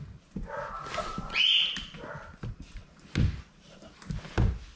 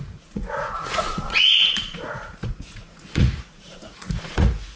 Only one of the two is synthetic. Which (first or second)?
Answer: second